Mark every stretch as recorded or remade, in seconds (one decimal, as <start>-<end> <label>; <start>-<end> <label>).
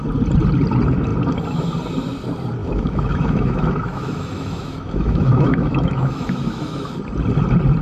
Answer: 0.0-2.6 recorded; 2.6-6.9 remade; 6.9-7.8 recorded